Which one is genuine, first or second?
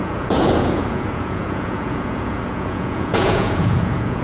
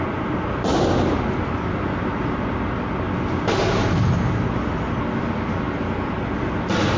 second